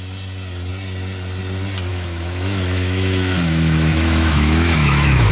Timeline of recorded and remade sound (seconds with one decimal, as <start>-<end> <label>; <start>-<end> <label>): 0.0-1.9 recorded; 1.9-5.3 remade